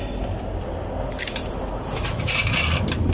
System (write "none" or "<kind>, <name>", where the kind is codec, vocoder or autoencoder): none